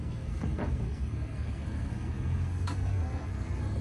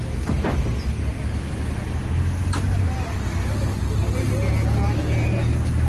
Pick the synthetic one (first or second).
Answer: first